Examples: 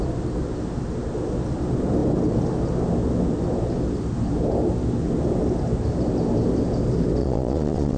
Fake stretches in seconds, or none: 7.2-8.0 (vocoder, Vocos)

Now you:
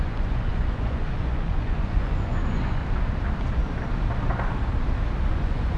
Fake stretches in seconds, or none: 0.0-2.8 (vocoder, Vocos); 5.3-5.8

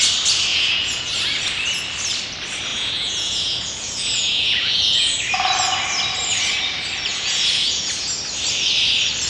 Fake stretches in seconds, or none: 0.5-1.1 (vocoder, Vocos); 2.7-5.2; 7.1-8.1

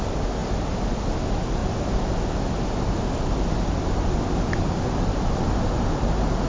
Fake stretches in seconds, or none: none

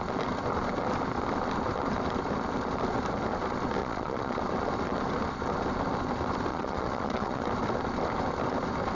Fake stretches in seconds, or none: 3.8-4.4 (vocoder, Vocos); 6.5-7.4

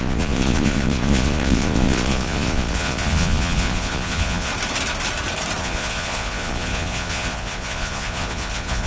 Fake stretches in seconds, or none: 0.0-4.5 (vocoder, Vocos); 5.6-8.9

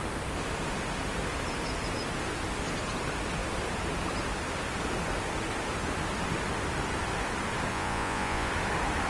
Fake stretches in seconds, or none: 7.7-8.5 (vocoder, Vocos)